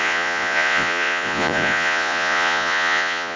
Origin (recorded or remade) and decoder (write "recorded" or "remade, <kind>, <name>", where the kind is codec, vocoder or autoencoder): remade, vocoder, Vocos